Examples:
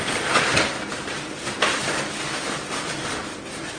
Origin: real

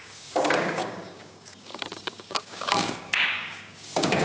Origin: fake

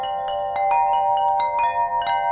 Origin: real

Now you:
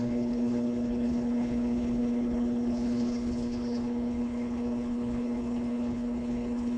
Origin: fake